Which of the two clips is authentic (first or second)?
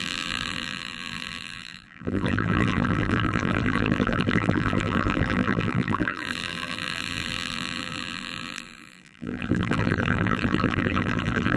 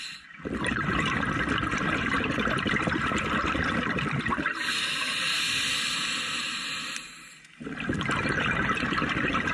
second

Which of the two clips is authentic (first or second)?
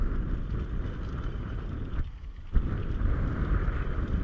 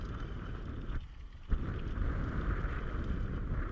second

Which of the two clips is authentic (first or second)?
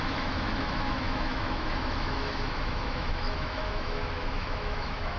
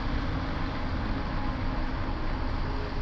second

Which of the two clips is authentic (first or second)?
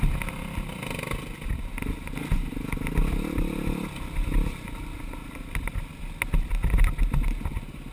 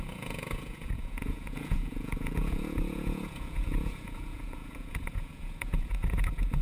first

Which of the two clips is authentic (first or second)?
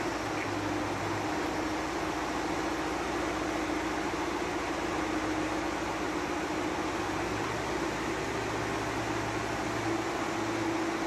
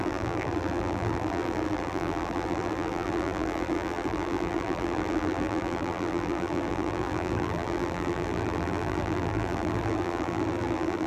first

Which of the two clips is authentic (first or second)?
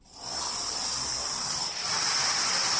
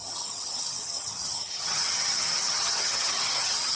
first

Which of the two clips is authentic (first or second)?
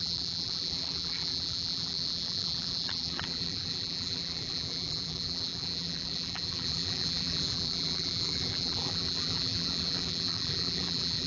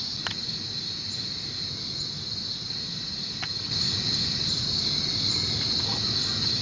second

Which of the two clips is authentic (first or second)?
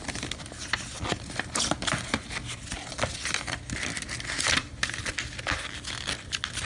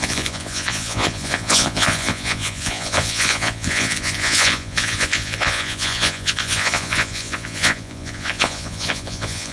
first